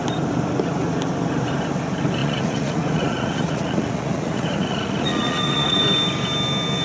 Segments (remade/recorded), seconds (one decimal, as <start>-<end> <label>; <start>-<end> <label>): 0.0-2.2 recorded; 2.2-5.8 remade; 5.8-6.8 recorded